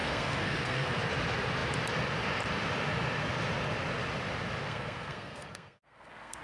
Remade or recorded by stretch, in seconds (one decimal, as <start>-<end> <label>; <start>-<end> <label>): 0.0-1.0 remade; 1.0-4.6 recorded; 4.6-6.4 remade